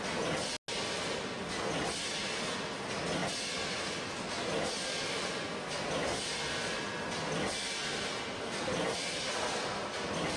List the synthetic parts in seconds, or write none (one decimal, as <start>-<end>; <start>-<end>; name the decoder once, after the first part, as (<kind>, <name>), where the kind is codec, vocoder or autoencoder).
none